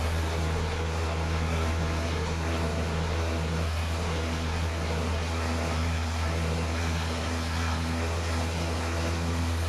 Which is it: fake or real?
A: fake